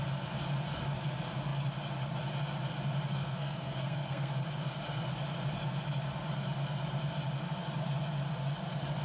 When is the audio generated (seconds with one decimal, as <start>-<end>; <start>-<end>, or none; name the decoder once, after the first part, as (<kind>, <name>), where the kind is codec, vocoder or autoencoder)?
3.1-4.3 (codec, SNAC)